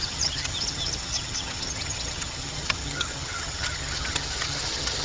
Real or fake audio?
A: fake